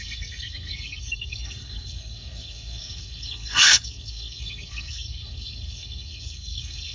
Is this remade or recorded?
remade